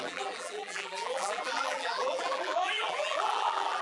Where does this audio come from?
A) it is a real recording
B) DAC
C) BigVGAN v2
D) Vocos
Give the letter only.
C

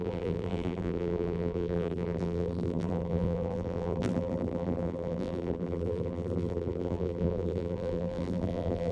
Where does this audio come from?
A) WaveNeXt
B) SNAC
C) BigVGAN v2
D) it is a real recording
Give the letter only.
C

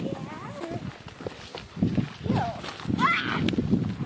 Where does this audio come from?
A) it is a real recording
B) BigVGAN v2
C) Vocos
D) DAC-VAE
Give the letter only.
A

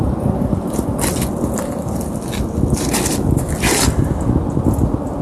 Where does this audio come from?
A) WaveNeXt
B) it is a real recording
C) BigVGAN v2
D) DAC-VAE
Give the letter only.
B